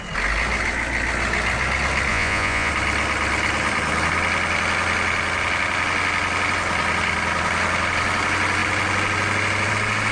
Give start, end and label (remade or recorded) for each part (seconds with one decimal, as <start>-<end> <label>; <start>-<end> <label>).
0.0-2.1 recorded; 2.1-2.7 remade; 2.7-10.1 recorded